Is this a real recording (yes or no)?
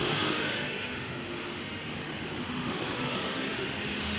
no